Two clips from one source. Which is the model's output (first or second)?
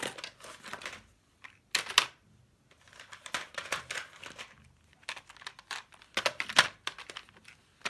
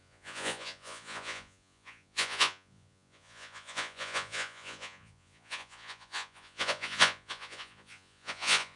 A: second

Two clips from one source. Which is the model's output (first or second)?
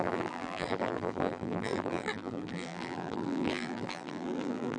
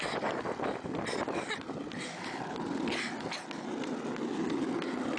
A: first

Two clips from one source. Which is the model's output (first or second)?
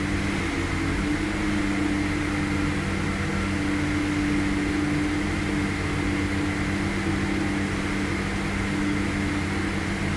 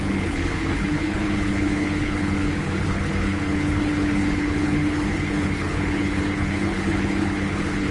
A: second